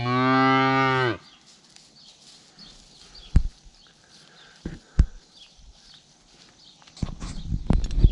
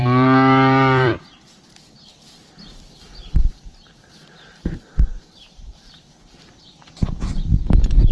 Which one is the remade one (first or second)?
second